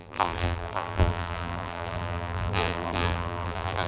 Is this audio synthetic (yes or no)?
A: yes